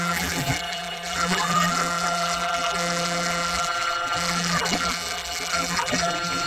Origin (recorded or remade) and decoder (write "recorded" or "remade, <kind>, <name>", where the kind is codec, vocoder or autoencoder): remade, vocoder, BigVGAN v2